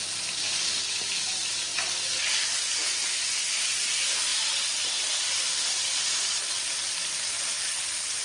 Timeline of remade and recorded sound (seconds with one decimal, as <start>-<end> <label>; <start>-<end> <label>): 0.0-8.2 recorded